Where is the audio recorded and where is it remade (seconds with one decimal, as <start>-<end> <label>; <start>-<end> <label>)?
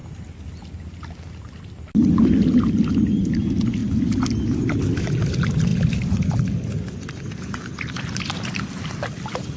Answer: 0.0-9.6 recorded